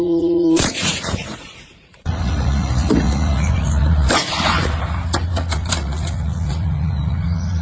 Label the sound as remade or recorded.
remade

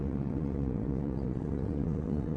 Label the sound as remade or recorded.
remade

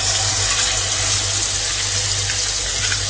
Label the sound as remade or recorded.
recorded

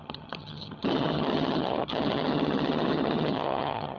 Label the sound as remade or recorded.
remade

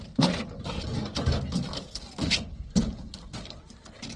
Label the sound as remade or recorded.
recorded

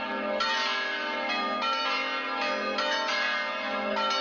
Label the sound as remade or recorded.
recorded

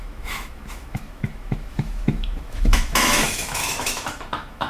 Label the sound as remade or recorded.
remade